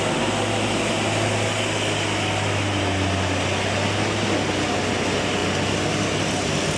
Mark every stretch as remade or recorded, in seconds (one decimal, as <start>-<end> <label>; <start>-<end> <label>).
0.0-6.8 recorded